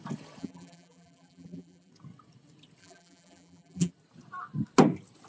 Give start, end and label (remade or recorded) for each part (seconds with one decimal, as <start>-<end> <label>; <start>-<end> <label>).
0.0-0.4 recorded; 0.4-1.9 remade; 1.9-2.8 recorded; 2.8-3.9 remade; 3.9-5.3 recorded